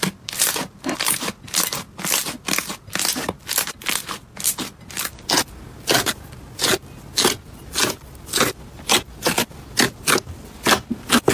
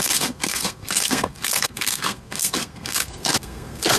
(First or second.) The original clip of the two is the first